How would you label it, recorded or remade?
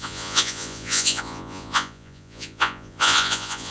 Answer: remade